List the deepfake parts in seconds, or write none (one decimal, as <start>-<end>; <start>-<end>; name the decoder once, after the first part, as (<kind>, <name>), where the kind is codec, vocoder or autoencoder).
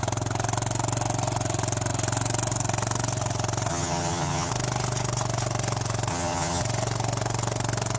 3.7-4.5 (vocoder, HiFi-GAN); 6.1-6.6